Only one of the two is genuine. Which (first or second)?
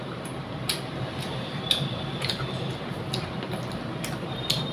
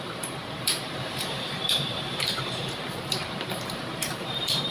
first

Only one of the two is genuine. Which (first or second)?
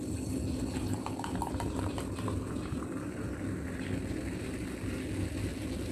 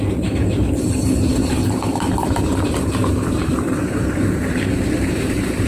first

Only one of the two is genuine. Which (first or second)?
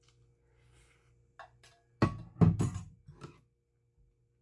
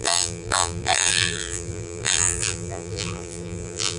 first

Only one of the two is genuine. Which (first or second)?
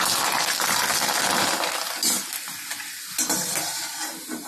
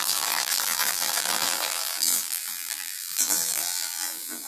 first